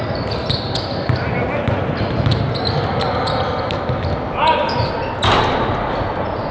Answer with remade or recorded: recorded